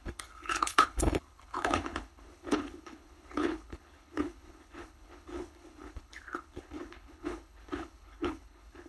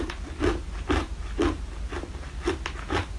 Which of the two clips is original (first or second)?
second